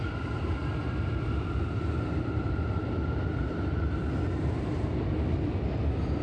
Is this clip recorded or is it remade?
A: remade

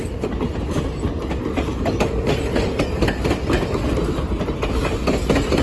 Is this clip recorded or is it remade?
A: recorded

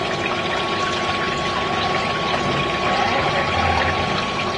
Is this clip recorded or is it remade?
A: recorded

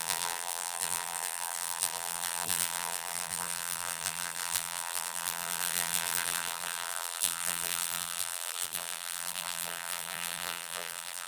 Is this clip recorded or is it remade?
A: remade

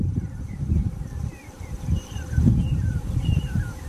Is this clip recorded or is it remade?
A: remade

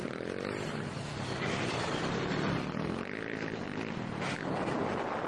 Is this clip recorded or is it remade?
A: remade